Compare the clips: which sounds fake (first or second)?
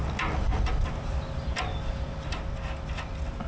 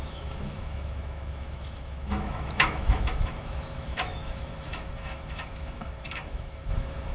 second